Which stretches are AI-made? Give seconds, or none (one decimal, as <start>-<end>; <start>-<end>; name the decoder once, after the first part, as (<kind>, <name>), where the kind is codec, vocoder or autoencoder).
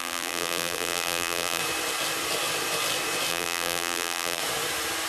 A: 0.0-1.6 (vocoder, BigVGAN v2); 3.3-4.4